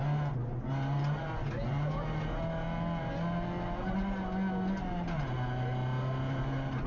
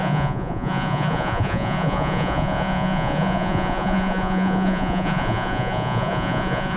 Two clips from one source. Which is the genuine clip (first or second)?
first